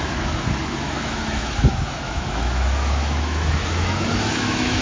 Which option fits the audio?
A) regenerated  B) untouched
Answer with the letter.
A